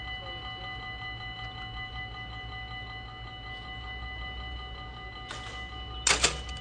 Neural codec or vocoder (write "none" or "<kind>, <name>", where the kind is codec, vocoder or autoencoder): none